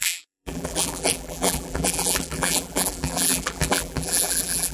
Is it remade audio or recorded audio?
remade